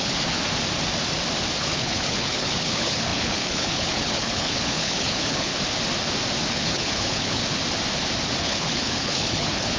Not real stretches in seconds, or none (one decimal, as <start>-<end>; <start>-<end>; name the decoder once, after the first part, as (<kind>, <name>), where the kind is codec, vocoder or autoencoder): 0.0-0.4 (codec, HILCodec); 1.6-5.5; 6.5-7.4; 8.4-9.8